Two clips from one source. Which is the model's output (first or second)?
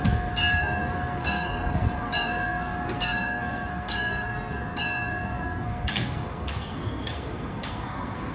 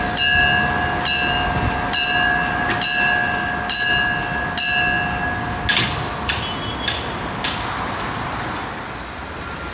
first